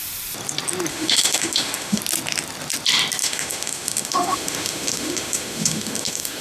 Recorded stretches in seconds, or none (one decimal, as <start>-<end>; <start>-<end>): 0.0-0.9; 2.0-3.2